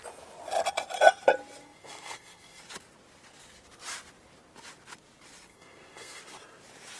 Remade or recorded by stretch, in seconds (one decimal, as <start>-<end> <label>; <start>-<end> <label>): 0.0-1.6 recorded; 1.6-2.6 remade; 2.6-5.5 recorded; 5.5-6.2 remade; 6.2-7.0 recorded